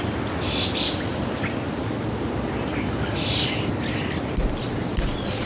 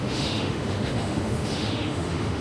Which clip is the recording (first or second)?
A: first